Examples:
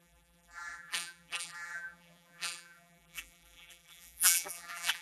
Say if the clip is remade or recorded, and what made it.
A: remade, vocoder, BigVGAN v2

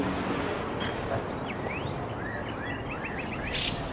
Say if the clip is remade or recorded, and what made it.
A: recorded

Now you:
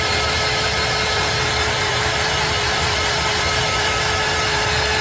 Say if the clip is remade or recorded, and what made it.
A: remade, vocoder, BigVGAN v2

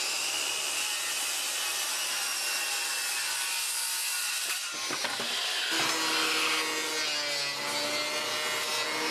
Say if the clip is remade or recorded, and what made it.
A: recorded